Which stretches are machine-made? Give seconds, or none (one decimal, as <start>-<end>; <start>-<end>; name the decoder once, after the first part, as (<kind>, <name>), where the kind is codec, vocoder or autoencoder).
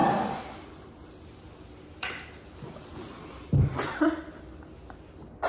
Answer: none